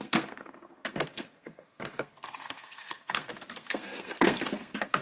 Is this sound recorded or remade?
remade